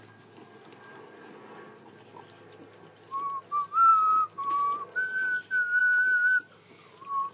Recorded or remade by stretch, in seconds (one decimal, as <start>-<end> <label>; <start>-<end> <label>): 0.0-7.3 recorded